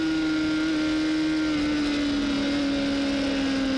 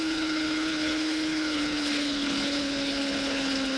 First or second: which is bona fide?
first